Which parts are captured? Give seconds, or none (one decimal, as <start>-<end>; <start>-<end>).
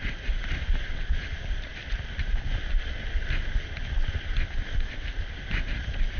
0.0-6.2